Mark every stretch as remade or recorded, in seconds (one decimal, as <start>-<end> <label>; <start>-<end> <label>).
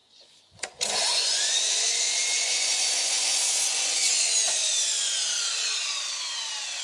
0.0-4.1 remade; 4.1-4.6 recorded; 4.6-5.2 remade; 5.2-6.8 recorded